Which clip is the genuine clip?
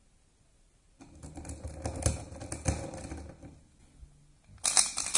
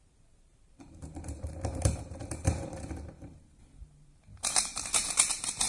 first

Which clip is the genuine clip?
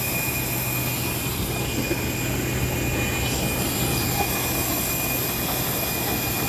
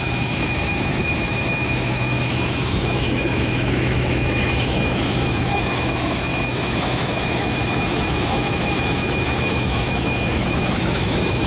first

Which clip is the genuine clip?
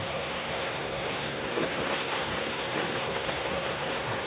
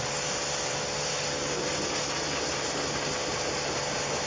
second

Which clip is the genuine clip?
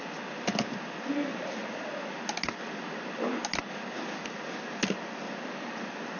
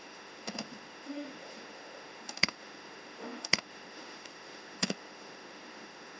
first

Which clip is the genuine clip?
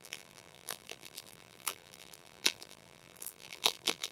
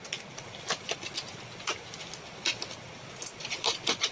second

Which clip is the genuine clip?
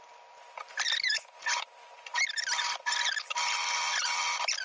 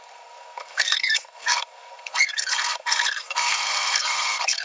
first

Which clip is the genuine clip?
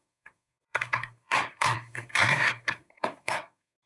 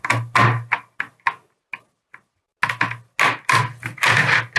second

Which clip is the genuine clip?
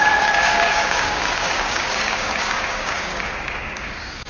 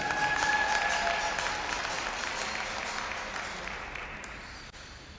second